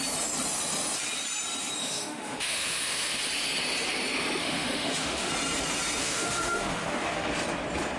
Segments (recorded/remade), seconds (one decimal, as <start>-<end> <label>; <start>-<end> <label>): 0.0-1.8 recorded; 1.8-3.2 remade; 3.2-4.4 recorded; 4.4-5.3 remade; 5.3-6.0 recorded; 6.0-7.3 remade; 7.3-8.0 recorded